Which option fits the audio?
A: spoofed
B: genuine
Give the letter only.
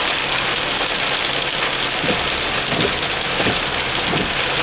B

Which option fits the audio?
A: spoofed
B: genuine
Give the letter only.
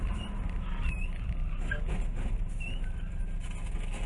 B